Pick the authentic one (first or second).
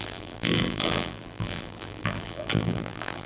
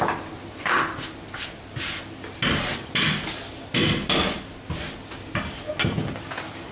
second